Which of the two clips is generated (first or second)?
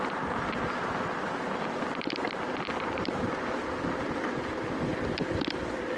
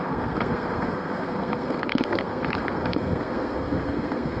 second